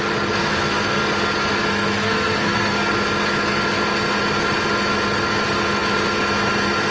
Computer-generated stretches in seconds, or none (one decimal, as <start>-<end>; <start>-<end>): 0.4-1.0; 1.7-2.9